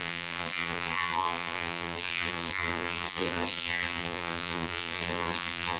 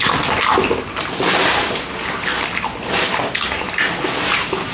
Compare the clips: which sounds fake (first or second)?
first